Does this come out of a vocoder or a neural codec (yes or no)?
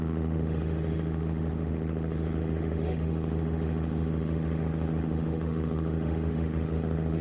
yes